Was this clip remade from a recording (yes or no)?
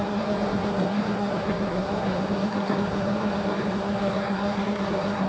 yes